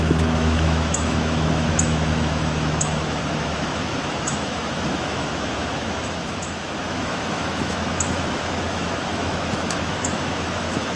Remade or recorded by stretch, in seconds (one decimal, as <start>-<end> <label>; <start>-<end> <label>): 0.0-11.0 remade